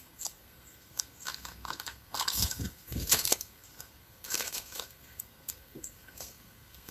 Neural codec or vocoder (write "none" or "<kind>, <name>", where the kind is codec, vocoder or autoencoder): codec, SNAC